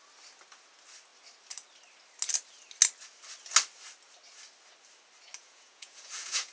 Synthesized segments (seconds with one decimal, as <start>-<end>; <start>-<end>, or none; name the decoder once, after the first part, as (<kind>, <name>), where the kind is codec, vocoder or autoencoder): 5.4-6.5 (vocoder, Vocos)